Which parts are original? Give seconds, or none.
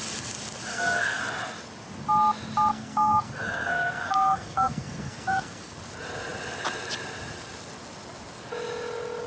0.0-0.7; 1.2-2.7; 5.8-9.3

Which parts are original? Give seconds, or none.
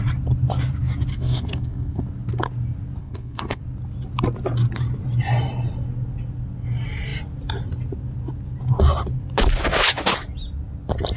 0.0-1.1; 2.0-3.0; 3.6-11.2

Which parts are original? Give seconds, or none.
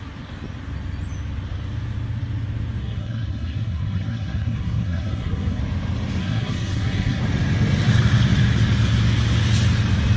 0.0-2.8; 5.6-6.2; 7.2-10.2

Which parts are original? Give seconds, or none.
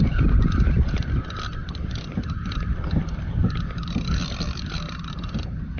0.0-5.8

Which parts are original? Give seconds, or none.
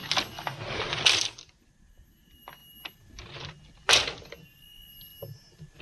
0.0-5.8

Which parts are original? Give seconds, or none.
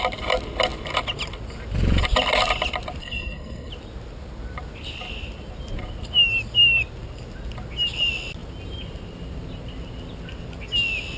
0.0-3.0; 3.7-11.2